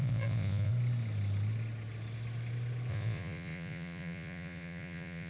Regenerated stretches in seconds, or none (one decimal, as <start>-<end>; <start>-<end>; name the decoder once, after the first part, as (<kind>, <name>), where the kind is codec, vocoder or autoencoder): 0.0-0.7 (vocoder, Vocos); 2.9-5.3